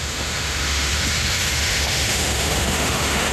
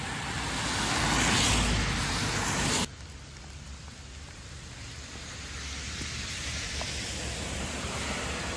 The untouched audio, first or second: second